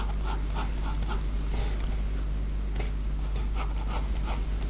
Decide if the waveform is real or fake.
real